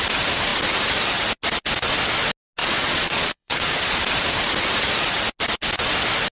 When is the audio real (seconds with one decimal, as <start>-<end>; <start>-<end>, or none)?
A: 0.0-2.6; 4.0-6.3